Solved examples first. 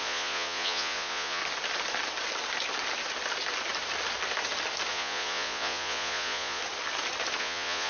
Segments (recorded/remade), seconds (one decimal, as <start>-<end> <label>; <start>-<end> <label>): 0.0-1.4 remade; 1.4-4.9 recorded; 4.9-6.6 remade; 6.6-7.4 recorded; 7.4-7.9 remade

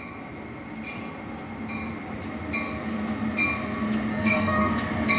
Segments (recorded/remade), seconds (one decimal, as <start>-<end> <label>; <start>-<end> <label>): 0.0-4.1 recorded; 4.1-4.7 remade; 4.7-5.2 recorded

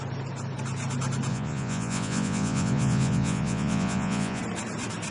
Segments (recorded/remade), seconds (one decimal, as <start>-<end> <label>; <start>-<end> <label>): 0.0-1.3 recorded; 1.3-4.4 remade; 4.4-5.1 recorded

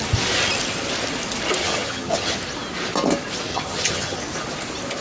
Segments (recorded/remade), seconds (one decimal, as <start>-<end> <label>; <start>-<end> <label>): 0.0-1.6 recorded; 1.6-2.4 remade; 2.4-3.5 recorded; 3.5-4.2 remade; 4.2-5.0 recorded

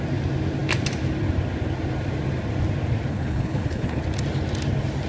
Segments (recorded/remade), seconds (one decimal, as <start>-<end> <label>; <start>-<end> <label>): 0.0-3.1 recorded; 3.1-4.0 remade; 4.0-5.1 recorded

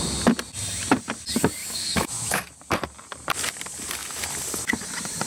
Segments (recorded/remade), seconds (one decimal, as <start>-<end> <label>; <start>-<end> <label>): 0.0-1.6 recorded; 1.6-2.4 remade; 2.4-5.3 recorded

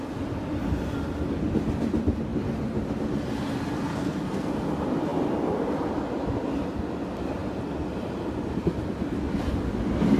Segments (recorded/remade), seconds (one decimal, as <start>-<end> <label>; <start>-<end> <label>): 0.0-3.9 recorded; 3.9-4.5 remade; 4.5-10.2 recorded